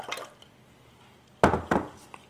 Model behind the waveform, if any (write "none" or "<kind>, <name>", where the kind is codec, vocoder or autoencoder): none